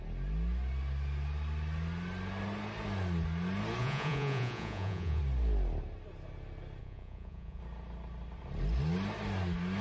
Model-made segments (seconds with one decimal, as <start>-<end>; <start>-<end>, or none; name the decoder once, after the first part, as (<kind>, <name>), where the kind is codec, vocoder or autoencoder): 3.8-5.2 (vocoder, Vocos); 6.8-7.6